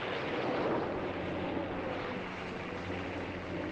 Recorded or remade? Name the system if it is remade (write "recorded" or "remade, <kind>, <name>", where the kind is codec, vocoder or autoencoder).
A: recorded